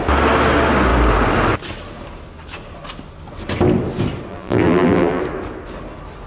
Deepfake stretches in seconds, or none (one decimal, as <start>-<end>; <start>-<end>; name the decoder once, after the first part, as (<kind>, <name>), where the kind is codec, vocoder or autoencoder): 4.3-5.2 (vocoder, BigVGAN v2)